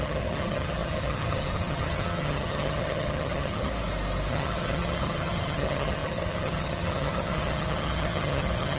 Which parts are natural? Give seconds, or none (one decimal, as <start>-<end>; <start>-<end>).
3.7-4.3